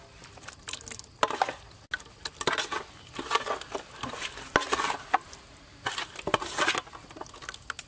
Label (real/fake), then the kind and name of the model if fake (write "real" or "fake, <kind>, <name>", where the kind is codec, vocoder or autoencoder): real